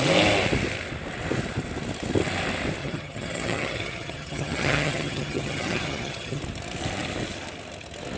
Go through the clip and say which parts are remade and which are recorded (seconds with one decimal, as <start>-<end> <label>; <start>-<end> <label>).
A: 0.0-2.8 recorded; 2.8-6.4 remade; 6.4-8.2 recorded

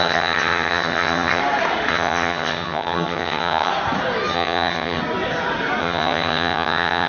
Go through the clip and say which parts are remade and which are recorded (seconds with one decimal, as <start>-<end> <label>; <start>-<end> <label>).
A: 0.0-1.4 remade; 1.4-1.9 recorded; 1.9-3.7 remade; 3.7-4.3 recorded; 4.3-5.0 remade; 5.0-5.8 recorded; 5.8-7.1 remade

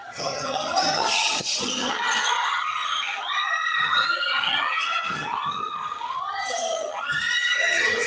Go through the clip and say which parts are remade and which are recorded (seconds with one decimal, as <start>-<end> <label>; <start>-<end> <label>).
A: 0.0-8.1 remade

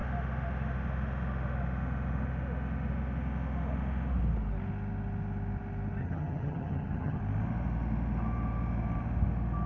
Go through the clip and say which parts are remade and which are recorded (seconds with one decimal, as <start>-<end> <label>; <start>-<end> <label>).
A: 0.0-6.0 recorded; 6.0-7.2 remade; 7.2-9.7 recorded

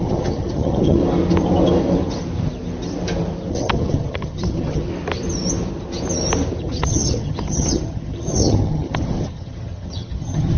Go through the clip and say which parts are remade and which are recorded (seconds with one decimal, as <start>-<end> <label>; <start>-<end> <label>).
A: 0.0-1.0 remade; 1.0-3.5 recorded; 3.5-4.9 remade; 4.9-6.6 recorded; 6.6-10.6 remade

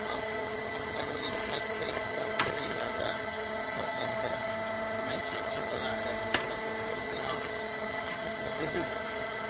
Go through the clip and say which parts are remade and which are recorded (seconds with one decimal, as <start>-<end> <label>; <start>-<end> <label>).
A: 0.0-4.5 remade; 4.5-5.1 recorded; 5.1-5.8 remade; 5.8-6.9 recorded; 6.9-9.5 remade

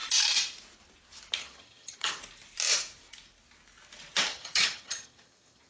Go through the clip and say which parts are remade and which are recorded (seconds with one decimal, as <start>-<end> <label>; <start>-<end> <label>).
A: 0.0-1.4 recorded; 1.4-2.2 remade; 2.2-4.3 recorded; 4.3-5.7 remade